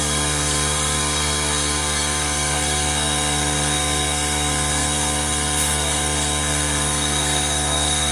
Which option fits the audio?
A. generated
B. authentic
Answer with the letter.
A